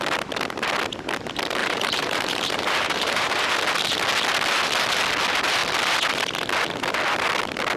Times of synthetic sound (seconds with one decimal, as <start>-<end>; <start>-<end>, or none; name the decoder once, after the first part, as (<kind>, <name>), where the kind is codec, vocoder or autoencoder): 1.6-3.5 (vocoder, BigVGAN v2)